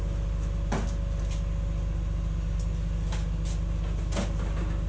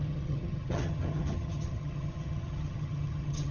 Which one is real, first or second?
first